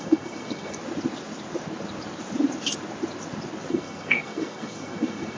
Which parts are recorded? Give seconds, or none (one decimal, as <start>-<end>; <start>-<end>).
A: 0.8-3.7